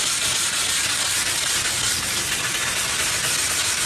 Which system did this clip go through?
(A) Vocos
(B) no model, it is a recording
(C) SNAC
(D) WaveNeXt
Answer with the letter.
B